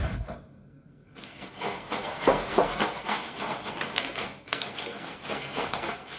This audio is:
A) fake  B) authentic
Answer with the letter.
A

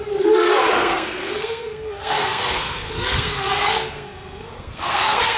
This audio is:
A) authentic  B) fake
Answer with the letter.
B